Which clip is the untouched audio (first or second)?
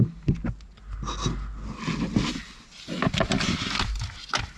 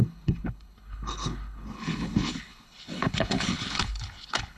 first